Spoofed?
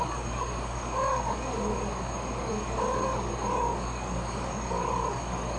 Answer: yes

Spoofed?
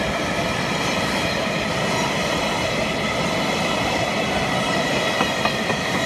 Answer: no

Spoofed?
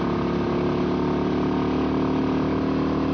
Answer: no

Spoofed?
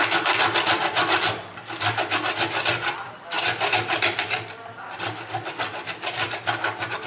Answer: no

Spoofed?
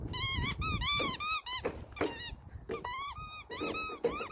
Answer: no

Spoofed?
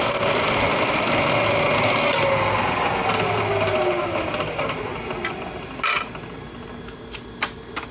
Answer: no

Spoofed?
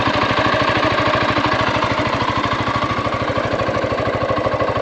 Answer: yes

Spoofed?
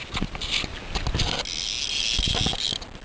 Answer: no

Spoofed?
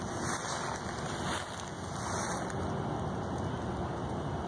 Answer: no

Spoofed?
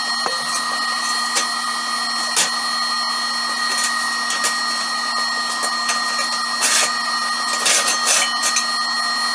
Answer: no